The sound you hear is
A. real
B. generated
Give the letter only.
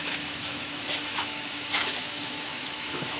B